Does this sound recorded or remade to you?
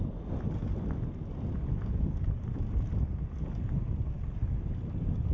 recorded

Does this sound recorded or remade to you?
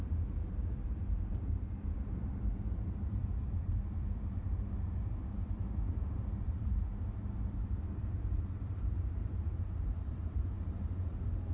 remade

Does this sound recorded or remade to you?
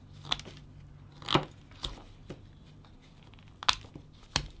recorded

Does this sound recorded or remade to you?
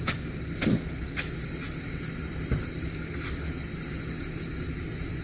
recorded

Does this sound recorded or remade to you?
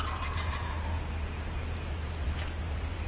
recorded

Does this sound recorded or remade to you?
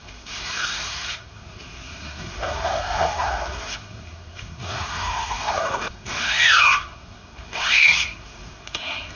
remade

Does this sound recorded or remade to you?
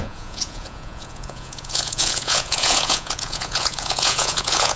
remade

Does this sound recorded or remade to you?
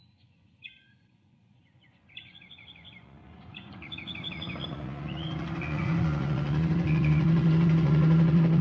remade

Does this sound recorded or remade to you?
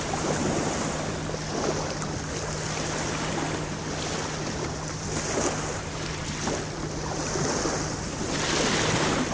recorded